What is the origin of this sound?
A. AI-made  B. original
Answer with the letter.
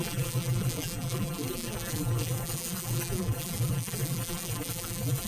A